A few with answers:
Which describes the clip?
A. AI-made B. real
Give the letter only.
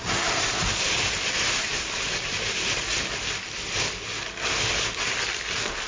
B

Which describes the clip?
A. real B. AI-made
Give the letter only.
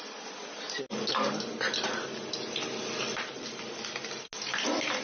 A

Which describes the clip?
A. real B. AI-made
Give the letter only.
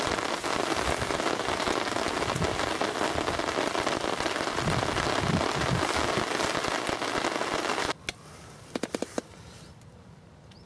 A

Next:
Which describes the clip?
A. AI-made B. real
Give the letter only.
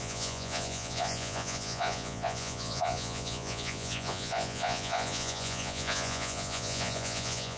A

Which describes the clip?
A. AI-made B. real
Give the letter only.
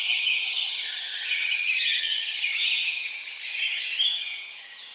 A